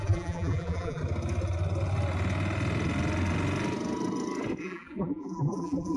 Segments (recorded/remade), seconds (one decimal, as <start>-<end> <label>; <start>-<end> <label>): 0.0-1.0 remade; 1.0-4.6 recorded; 4.6-6.0 remade